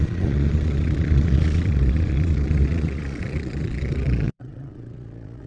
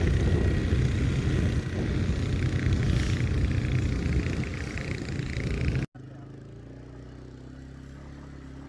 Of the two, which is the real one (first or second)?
second